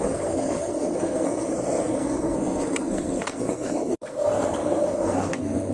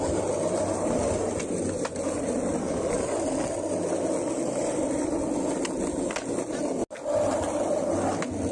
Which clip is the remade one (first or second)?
first